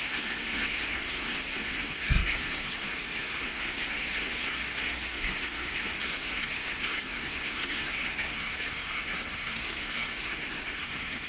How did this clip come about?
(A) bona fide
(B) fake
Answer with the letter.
B